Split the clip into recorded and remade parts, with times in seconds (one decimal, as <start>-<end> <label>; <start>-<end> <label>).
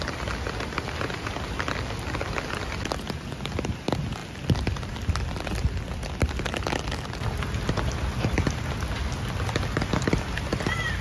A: 0.0-11.0 recorded